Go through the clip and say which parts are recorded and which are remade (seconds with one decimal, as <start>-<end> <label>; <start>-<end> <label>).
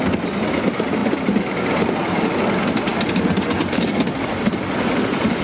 0.0-5.4 recorded